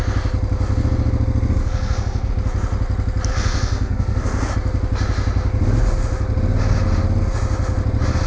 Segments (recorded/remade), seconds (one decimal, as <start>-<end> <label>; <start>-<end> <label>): 0.0-1.6 recorded; 1.6-2.3 remade; 2.3-3.3 recorded; 3.3-4.5 remade; 4.5-8.3 recorded